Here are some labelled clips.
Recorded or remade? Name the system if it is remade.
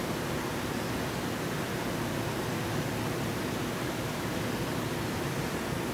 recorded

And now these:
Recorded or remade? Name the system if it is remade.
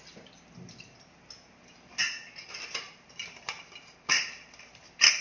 recorded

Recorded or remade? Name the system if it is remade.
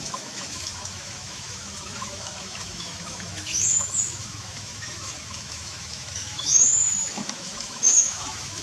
remade, autoencoder, DAC-VAE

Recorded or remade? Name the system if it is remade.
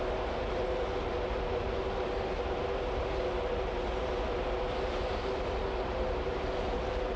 recorded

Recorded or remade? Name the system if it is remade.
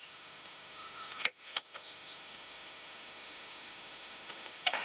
remade, autoencoder, DAC-VAE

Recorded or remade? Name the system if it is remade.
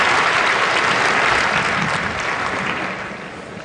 recorded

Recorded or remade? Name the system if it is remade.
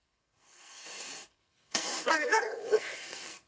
remade, codec, SNAC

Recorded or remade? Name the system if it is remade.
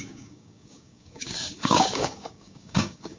remade, codec, DAC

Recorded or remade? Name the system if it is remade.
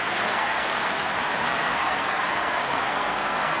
remade, codec, SNAC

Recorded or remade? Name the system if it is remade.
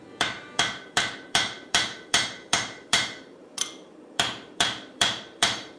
remade, vocoder, BigVGAN v2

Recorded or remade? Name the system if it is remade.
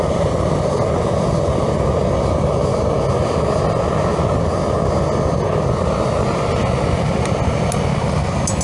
recorded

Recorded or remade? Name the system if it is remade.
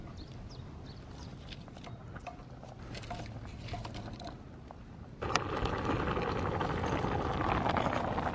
recorded